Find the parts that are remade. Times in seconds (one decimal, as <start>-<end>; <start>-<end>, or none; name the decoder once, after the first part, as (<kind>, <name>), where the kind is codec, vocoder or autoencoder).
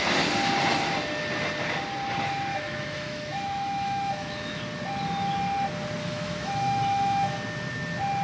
2.5-4.6 (autoencoder, DAC-VAE); 6.0-7.4